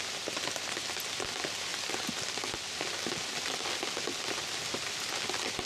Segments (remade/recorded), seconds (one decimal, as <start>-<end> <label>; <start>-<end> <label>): 0.0-5.7 recorded